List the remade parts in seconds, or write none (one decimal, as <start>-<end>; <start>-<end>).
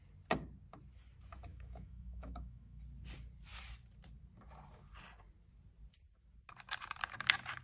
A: 1.5-2.8